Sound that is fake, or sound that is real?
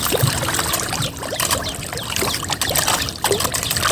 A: real